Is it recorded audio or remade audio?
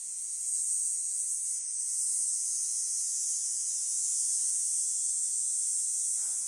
remade